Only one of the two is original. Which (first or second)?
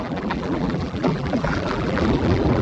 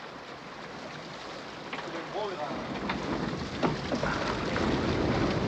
second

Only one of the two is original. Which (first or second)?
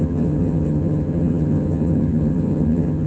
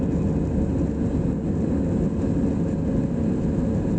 second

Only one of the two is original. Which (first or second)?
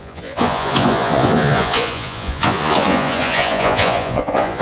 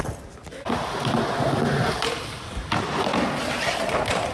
second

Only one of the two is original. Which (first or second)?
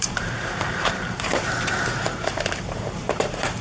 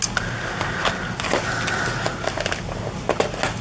second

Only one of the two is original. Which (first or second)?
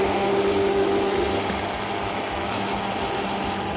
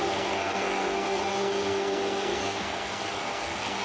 first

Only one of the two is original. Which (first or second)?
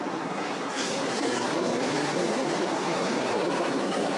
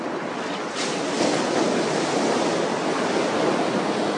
second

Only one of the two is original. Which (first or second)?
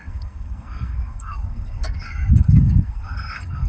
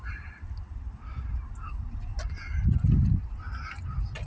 second